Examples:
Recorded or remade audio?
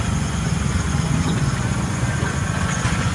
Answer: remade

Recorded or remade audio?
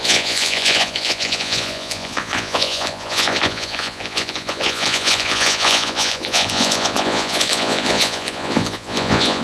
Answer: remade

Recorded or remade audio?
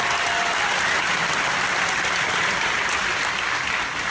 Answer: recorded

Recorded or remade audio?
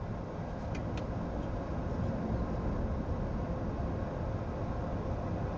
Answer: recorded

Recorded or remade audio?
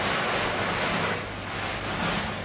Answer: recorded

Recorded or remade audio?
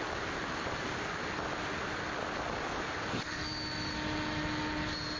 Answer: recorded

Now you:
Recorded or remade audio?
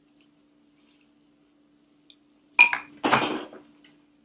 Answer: recorded